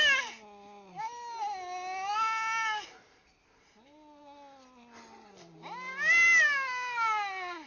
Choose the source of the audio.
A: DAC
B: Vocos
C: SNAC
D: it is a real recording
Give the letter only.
D